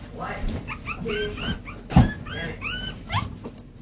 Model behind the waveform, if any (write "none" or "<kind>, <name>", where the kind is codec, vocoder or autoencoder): vocoder, BigVGAN v2